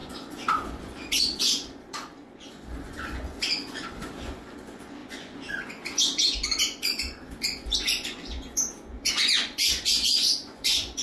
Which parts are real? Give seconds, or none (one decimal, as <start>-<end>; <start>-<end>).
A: none